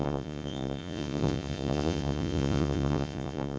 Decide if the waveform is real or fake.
fake